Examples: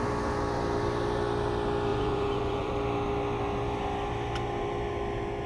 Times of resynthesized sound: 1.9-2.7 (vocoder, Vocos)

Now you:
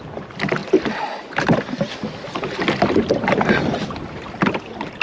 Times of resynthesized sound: none